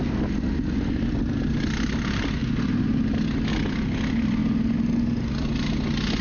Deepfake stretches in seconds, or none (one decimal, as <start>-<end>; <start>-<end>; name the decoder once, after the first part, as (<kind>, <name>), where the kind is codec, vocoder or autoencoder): none